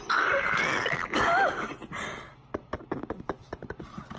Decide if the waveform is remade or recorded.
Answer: recorded